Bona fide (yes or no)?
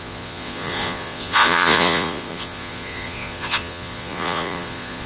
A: no